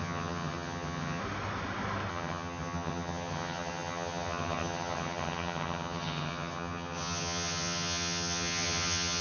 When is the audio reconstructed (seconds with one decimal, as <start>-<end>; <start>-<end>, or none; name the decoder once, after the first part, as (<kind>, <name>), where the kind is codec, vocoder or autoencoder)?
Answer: 0.0-1.2 (vocoder, HiFi-GAN); 2.1-9.2